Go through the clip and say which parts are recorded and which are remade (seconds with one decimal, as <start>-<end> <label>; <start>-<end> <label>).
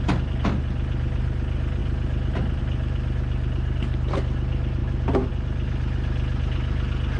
0.0-7.2 recorded